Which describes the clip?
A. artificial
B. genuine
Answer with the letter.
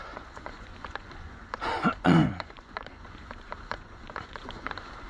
A